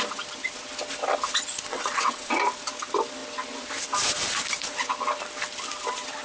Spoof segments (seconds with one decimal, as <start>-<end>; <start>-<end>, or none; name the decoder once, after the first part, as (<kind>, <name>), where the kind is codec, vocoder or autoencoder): 1.7-2.3 (vocoder, WaveNeXt)